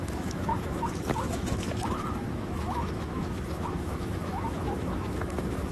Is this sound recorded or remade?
remade